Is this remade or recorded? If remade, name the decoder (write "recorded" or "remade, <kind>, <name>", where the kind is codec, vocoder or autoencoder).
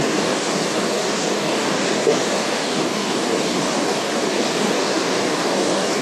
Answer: remade, codec, DAC